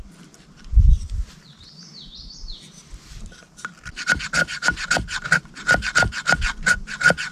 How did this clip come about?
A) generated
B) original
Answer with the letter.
A